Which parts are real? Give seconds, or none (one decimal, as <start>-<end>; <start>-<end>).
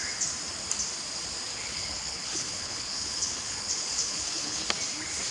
0.0-1.5; 4.7-5.3